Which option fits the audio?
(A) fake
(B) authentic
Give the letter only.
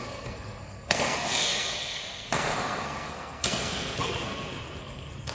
A